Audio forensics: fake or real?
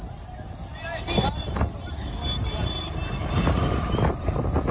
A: real